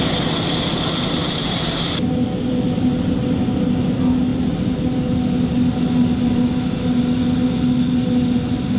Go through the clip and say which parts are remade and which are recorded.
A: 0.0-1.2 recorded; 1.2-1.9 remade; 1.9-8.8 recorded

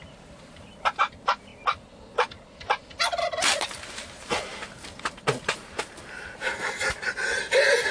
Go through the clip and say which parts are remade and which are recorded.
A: 0.0-1.5 remade; 1.5-3.7 recorded; 3.7-4.5 remade; 4.5-5.1 recorded; 5.1-7.9 remade

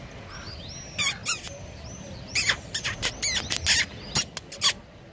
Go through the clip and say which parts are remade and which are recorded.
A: 0.0-5.1 recorded

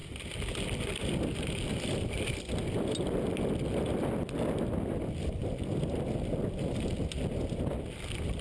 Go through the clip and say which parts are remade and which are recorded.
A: 0.0-8.4 recorded

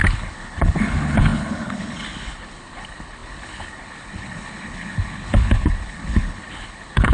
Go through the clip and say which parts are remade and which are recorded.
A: 0.0-7.1 remade

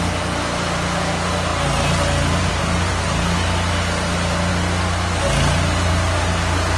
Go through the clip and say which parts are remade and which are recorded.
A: 0.0-6.8 recorded

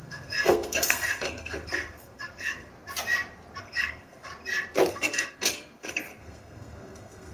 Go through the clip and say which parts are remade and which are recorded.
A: 0.0-2.7 remade; 2.7-3.6 recorded; 3.6-4.3 remade; 4.3-4.9 recorded; 4.9-7.3 remade